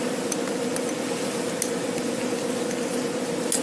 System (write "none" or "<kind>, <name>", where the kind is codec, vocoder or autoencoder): none